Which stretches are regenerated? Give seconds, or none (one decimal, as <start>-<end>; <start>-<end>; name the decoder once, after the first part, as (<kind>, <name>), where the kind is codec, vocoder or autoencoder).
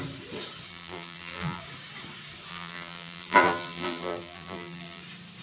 0.7-1.6 (vocoder, BigVGAN v2); 2.5-5.0